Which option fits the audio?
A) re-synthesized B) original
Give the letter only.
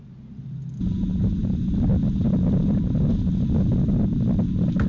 B